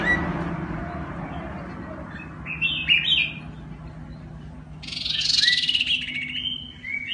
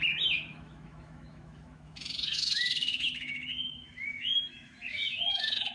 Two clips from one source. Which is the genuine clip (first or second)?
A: first